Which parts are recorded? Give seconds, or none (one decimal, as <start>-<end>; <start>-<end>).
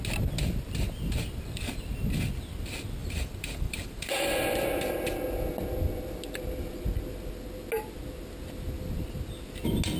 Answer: 0.0-3.0; 4.3-10.0